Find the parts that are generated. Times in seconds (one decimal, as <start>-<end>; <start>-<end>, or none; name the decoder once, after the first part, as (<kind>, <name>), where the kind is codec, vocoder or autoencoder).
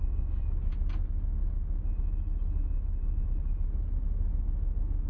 none